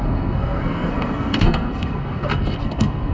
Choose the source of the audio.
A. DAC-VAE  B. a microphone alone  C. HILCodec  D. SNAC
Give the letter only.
D